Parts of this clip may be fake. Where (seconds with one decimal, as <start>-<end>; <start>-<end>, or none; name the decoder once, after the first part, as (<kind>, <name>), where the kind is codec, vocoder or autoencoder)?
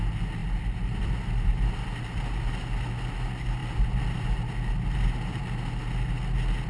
0.4-2.9 (vocoder, BigVGAN v2); 3.6-5.4